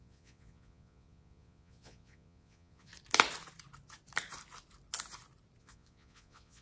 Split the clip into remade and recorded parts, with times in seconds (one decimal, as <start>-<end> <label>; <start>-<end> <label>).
0.0-2.9 remade; 2.9-5.6 recorded; 5.6-6.6 remade